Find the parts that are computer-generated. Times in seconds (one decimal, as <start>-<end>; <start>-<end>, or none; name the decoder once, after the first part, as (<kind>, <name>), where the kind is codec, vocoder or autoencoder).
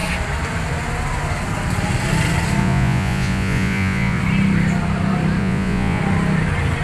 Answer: 2.6-4.2 (vocoder, Vocos); 5.4-6.0